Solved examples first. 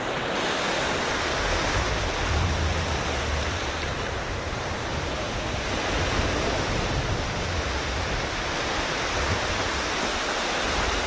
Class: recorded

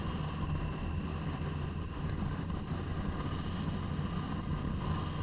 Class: recorded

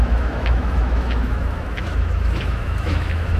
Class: remade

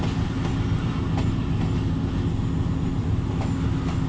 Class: recorded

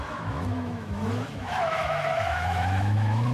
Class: remade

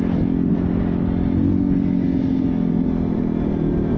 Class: recorded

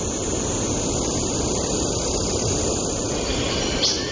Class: recorded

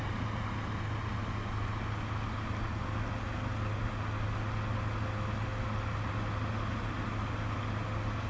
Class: recorded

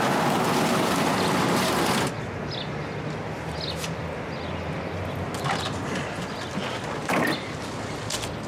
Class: recorded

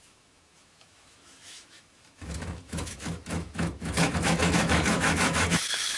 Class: remade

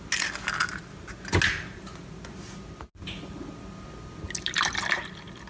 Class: recorded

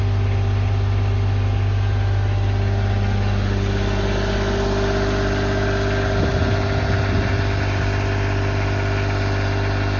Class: recorded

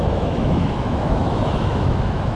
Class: remade